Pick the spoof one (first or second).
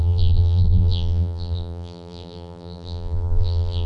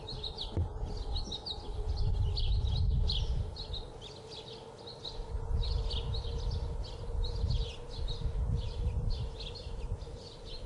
first